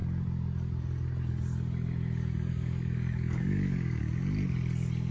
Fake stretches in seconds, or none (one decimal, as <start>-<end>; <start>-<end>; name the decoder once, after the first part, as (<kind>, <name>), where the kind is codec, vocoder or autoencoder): 2.5-4.0 (codec, DAC)